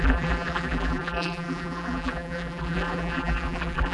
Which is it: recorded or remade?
remade